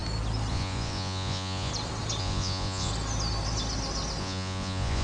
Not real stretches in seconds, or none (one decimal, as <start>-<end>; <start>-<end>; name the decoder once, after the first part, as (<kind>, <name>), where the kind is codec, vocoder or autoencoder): 0.5-1.7 (vocoder, Vocos); 2.2-2.9; 4.2-5.0